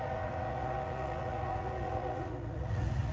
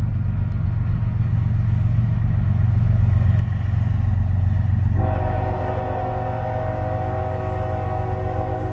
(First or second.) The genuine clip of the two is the second